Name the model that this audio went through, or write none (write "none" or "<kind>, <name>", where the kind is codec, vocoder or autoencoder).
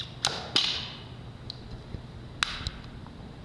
none